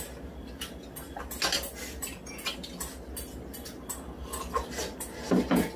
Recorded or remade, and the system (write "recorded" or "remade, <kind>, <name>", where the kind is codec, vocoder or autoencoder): recorded